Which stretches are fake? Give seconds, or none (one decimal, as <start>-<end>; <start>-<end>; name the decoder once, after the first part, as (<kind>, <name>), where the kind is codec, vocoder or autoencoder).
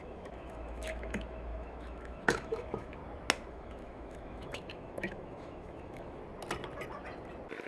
0.0-3.0 (autoencoder, DAC-VAE); 3.5-6.2